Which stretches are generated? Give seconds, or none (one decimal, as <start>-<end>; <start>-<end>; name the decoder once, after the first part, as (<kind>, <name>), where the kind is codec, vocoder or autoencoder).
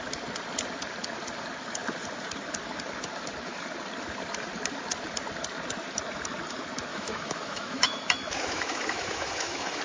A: 6.9-9.8 (autoencoder, DAC-VAE)